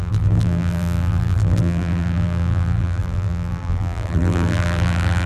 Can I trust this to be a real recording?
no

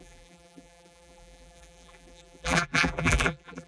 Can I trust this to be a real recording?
no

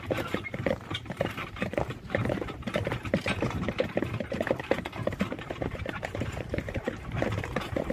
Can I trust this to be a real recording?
no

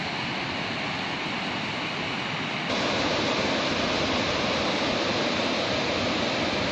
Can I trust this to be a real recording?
yes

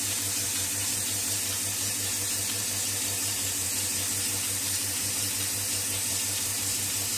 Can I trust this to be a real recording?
no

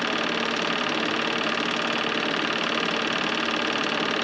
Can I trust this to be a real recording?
no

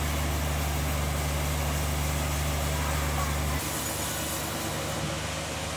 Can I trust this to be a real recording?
yes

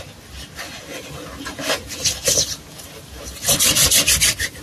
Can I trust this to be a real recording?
yes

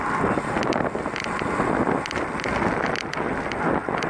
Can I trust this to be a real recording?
yes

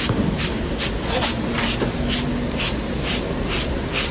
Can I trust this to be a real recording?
yes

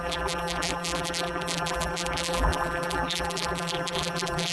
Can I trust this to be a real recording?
no